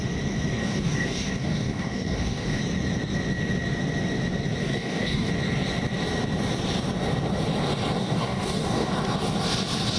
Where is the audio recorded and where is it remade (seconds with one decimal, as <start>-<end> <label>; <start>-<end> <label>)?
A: 0.0-0.6 recorded; 0.6-2.6 remade; 2.6-4.6 recorded; 4.6-5.3 remade; 5.3-8.0 recorded; 8.0-8.9 remade; 8.9-10.0 recorded

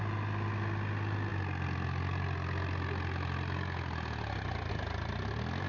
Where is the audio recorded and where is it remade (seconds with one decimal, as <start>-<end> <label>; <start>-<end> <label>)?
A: 0.0-5.7 recorded

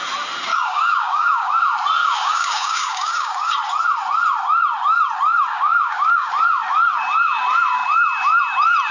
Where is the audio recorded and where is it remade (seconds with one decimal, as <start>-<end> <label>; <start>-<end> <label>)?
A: 0.0-0.5 recorded; 0.5-1.5 remade; 1.5-2.0 recorded; 2.0-3.5 remade; 3.5-5.5 recorded; 5.5-6.3 remade; 6.3-8.9 recorded

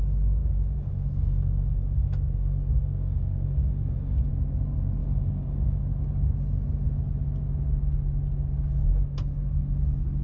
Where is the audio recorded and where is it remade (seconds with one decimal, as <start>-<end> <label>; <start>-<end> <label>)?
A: 0.0-0.4 recorded; 0.4-4.3 remade; 4.3-5.0 recorded; 5.0-5.8 remade; 5.8-10.2 recorded

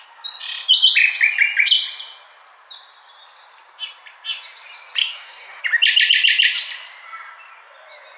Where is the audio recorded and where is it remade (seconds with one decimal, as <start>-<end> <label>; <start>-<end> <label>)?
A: 0.0-5.0 recorded; 5.0-5.6 remade; 5.6-8.2 recorded

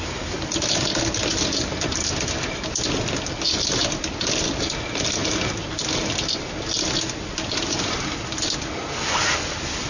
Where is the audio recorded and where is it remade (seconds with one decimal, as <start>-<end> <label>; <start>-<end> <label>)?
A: 0.0-9.9 recorded

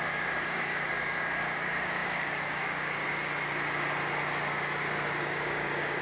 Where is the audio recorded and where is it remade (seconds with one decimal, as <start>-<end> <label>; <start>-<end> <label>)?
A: 0.0-3.1 remade; 3.1-5.2 recorded; 5.2-6.0 remade